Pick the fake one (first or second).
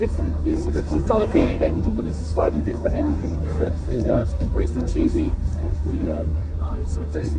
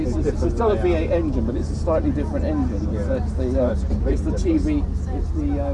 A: first